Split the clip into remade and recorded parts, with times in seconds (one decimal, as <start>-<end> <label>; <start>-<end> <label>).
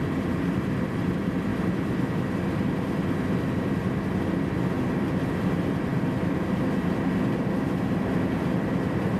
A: 0.0-9.2 recorded